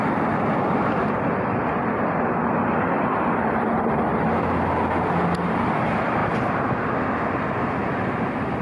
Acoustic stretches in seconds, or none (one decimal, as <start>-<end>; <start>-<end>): 0.0-6.2; 6.7-8.6